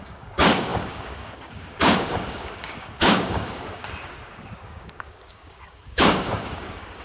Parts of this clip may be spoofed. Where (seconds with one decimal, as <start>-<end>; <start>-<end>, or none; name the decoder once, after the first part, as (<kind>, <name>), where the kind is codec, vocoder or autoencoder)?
0.0-7.0 (codec, DAC)